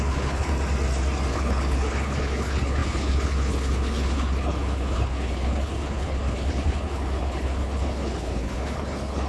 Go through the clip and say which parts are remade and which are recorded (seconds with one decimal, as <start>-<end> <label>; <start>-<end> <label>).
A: 0.0-0.5 remade; 0.5-1.3 recorded; 1.3-9.3 remade